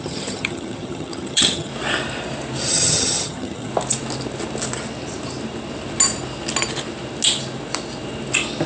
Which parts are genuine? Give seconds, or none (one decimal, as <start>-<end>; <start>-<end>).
1.7-2.7; 3.7-8.7